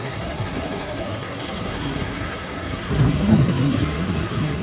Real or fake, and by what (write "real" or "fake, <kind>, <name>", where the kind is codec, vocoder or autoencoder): fake, codec, SNAC